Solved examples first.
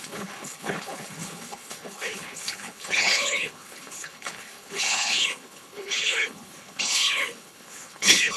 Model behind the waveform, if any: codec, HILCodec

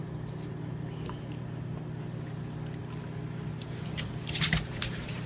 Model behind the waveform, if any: none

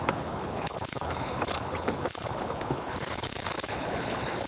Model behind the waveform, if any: codec, HILCodec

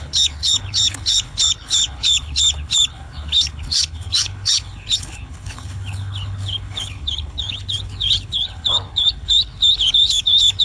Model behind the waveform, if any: codec, HILCodec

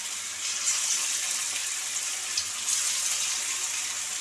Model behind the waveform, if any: none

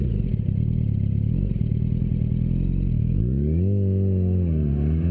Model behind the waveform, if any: none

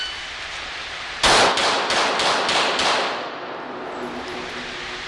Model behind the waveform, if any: none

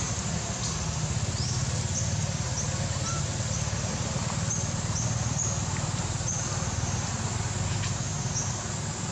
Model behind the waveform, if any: none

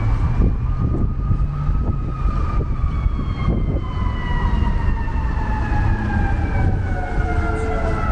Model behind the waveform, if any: none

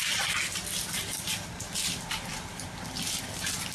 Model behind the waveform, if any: none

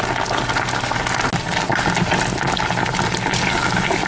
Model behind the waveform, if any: none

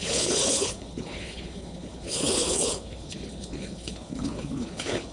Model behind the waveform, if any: codec, HILCodec